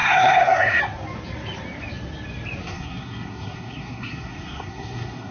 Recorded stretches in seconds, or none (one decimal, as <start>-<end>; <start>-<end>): 0.8-2.6